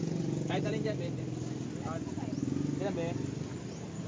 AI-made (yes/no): no